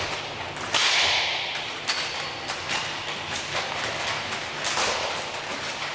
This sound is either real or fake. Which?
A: real